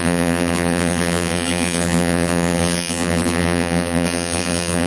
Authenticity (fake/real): fake